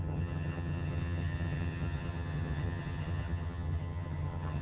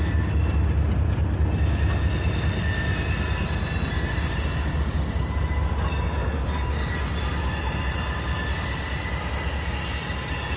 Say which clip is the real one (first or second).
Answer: second